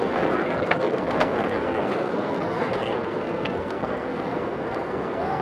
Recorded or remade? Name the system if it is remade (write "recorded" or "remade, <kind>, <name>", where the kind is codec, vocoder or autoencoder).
remade, codec, SNAC